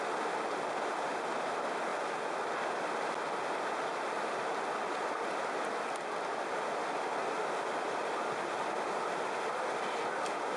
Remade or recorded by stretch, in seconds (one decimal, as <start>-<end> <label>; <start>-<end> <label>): 0.0-10.6 recorded